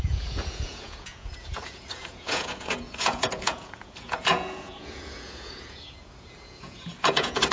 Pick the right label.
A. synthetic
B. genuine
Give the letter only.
A